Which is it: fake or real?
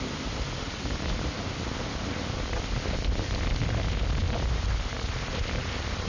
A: real